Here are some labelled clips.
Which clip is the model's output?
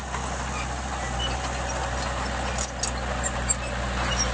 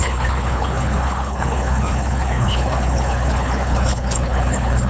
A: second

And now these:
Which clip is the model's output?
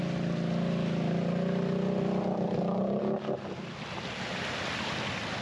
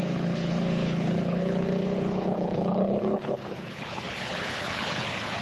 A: second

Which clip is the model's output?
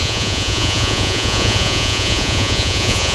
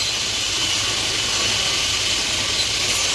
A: first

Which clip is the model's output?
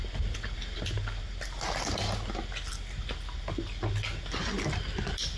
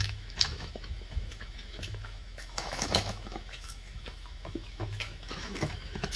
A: second